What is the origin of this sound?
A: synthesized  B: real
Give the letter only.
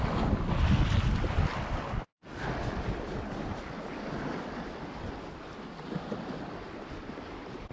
B